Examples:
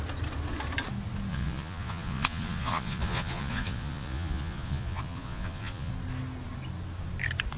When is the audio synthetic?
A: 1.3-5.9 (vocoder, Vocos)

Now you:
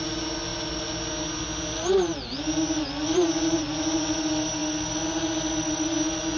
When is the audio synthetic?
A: none

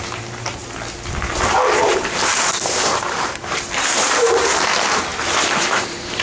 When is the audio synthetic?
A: 0.0-0.6 (vocoder, BigVGAN v2); 1.5-6.2

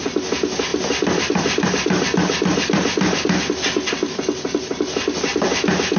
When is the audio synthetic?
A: 0.7-3.4 (vocoder, BigVGAN v2)

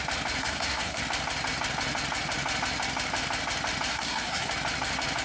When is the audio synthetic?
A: 0.4-1.0 (codec, SNAC); 3.9-4.5